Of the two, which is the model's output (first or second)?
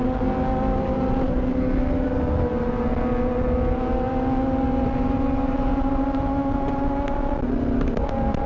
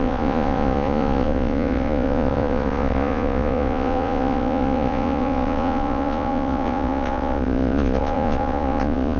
second